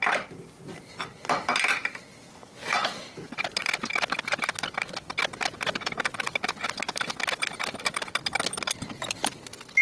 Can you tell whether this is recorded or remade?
recorded